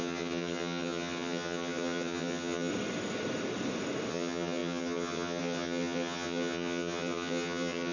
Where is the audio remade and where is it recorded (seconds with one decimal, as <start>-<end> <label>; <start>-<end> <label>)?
0.0-2.7 remade; 2.7-4.1 recorded; 4.1-7.9 remade